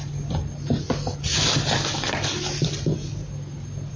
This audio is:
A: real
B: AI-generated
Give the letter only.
A